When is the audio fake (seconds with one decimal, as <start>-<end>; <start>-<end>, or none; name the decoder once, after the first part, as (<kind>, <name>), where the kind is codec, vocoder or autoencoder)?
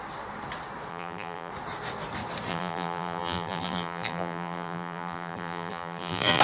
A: 0.9-1.5 (vocoder, BigVGAN v2); 2.5-6.4